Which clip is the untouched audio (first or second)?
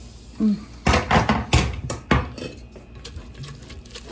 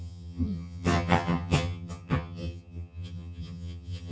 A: first